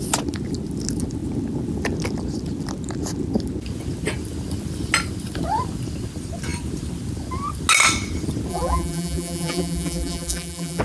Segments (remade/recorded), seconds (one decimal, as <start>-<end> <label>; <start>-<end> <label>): 0.0-8.5 recorded; 8.5-10.8 remade